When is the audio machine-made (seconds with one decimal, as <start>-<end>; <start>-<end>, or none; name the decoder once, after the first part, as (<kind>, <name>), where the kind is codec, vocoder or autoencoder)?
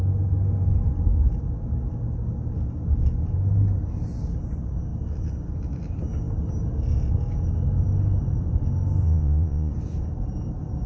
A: 9.0-9.7 (vocoder, Vocos)